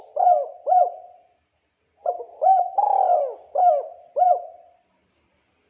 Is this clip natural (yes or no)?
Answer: yes